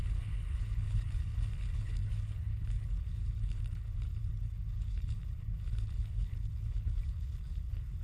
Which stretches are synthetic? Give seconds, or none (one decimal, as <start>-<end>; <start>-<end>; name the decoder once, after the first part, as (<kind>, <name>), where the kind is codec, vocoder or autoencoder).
0.0-8.0 (codec, HILCodec)